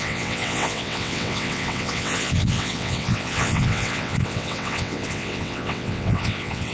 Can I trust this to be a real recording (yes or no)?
no